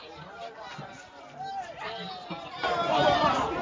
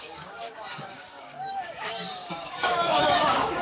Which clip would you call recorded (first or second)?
first